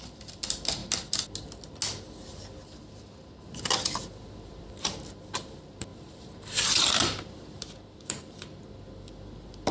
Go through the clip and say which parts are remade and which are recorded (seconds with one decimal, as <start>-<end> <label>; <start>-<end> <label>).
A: 0.0-5.9 recorded; 5.9-8.6 remade; 8.6-9.7 recorded